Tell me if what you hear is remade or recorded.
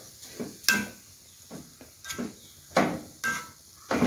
recorded